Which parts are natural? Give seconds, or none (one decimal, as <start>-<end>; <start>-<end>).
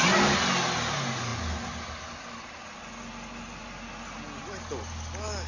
0.0-5.5